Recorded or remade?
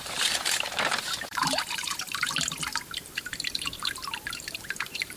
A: remade